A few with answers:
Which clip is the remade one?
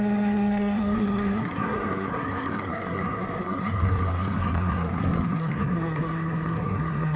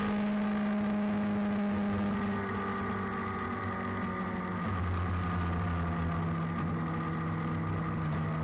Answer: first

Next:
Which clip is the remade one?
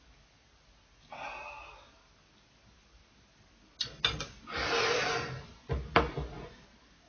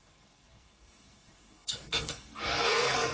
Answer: second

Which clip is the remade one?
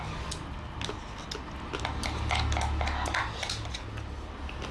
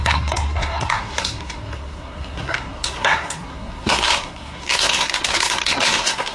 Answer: second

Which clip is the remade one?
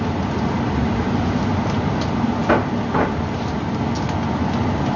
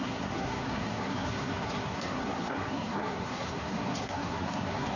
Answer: second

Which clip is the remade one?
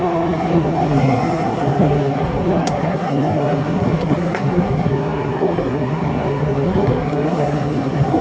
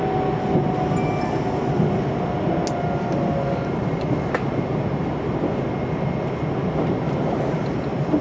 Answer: first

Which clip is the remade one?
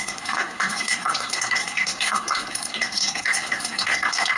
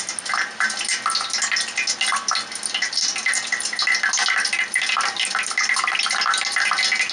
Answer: first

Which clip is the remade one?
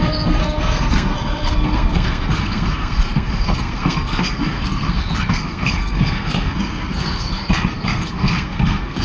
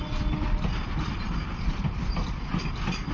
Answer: first